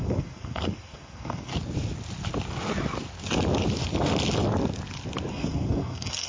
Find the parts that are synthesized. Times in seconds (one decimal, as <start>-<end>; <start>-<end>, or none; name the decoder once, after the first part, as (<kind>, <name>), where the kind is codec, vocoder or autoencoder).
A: 0.0-1.5 (codec, SNAC); 5.3-6.3

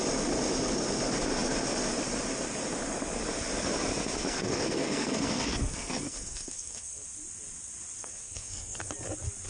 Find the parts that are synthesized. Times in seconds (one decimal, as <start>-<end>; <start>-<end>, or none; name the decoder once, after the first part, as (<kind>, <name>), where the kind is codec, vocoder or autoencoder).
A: 4.2-7.1 (codec, SNAC); 8.0-8.9

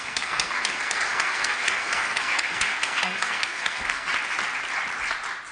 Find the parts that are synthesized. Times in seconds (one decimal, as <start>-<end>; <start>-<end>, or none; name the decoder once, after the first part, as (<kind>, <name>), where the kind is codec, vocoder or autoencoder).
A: 0.0-4.1 (codec, SNAC)

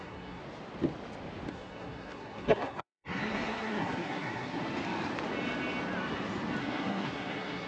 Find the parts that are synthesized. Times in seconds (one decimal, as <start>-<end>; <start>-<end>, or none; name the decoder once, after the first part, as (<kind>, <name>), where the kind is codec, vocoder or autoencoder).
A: 0.0-0.4 (codec, SNAC); 1.5-4.6; 6.6-7.7

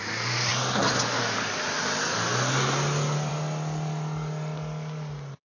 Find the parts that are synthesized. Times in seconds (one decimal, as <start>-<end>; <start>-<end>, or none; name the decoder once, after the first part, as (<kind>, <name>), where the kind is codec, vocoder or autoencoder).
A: none